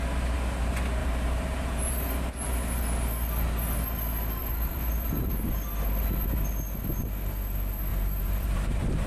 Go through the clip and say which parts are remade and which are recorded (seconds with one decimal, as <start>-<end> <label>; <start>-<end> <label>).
0.0-1.0 recorded; 1.0-2.5 remade; 2.5-4.4 recorded; 4.4-5.3 remade; 5.3-7.9 recorded; 7.9-9.1 remade